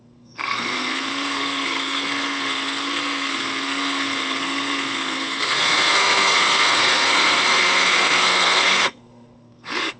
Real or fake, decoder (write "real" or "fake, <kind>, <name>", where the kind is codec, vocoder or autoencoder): fake, codec, SNAC